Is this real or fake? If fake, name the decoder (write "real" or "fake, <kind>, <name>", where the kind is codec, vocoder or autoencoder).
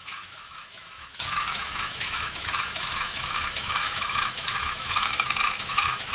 fake, autoencoder, DAC-VAE